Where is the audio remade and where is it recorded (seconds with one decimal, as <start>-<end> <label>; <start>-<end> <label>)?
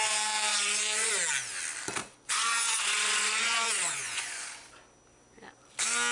0.0-0.5 recorded; 0.5-1.1 remade; 1.1-2.0 recorded; 2.0-4.7 remade; 4.7-6.1 recorded